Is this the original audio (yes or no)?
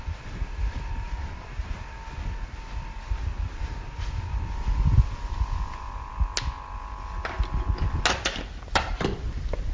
yes